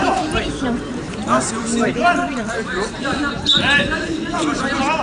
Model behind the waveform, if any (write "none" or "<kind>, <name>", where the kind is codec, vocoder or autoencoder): vocoder, BigVGAN v2